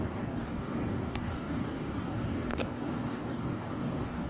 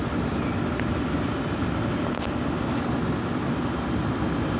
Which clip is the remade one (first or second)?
first